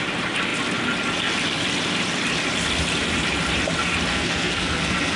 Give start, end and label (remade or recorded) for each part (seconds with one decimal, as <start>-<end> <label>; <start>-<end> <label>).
0.0-4.1 recorded; 4.1-5.2 remade